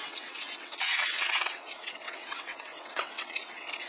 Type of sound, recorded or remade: remade